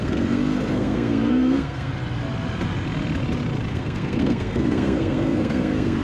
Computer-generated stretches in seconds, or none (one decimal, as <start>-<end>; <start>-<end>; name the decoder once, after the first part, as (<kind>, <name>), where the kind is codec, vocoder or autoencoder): 0.0-1.9 (codec, SNAC); 3.7-6.0